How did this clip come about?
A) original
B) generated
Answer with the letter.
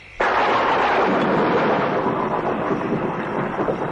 A